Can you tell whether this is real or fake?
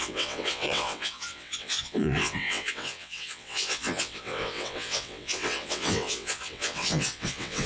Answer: fake